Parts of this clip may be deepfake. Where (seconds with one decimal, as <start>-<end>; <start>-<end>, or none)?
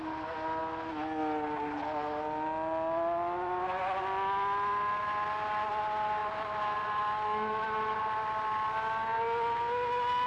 none